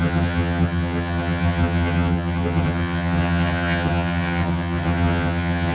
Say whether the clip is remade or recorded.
remade